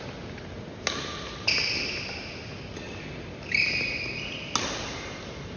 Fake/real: real